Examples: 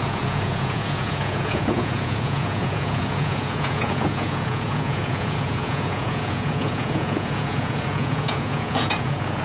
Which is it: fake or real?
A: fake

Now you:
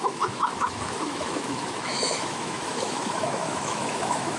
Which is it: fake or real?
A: fake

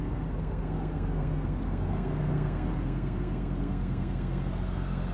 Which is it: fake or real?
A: fake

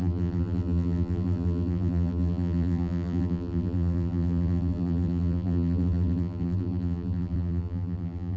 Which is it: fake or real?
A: fake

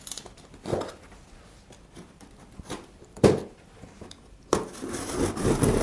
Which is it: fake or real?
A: real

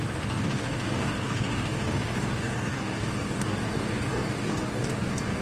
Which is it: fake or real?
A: fake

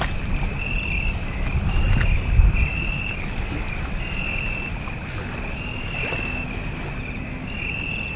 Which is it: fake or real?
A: real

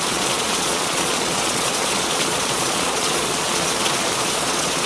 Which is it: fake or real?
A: fake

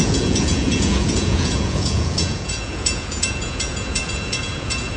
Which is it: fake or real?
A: fake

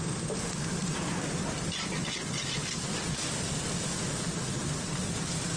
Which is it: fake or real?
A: fake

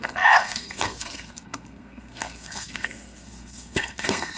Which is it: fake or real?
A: fake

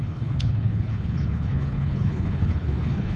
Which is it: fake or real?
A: fake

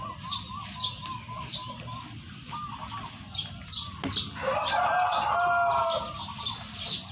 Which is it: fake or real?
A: real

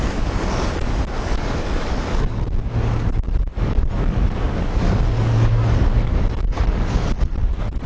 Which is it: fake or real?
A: fake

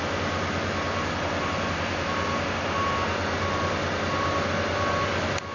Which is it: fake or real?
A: real